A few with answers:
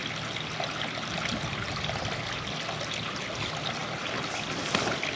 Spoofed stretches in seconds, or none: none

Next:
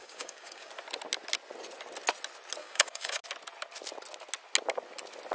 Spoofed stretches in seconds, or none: 0.0-0.7 (codec, DAC); 2.6-3.2

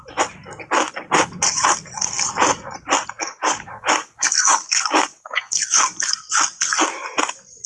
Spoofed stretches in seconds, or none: 3.2-5.5 (codec, DAC)

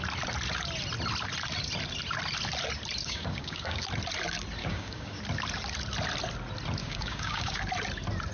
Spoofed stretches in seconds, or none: 3.0-3.8 (codec, DAC); 4.6-5.2; 6.8-7.6

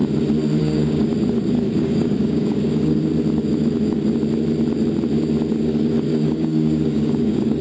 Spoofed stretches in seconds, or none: 0.6-1.1 (codec, DAC); 1.8-3.0; 5.5-7.6